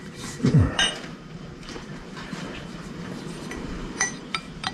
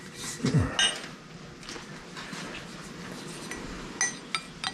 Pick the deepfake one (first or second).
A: first